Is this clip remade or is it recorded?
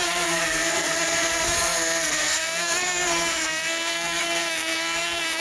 remade